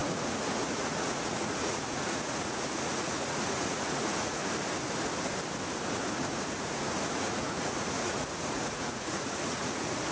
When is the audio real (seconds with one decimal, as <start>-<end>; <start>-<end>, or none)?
4.4-6.1